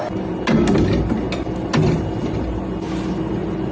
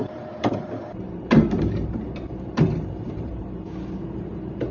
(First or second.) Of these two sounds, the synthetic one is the second